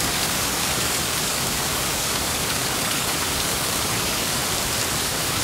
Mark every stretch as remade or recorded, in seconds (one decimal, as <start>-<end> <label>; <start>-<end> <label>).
0.0-4.4 remade; 4.4-5.0 recorded; 5.0-5.4 remade